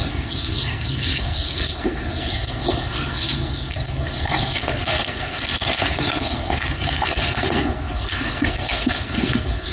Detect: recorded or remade remade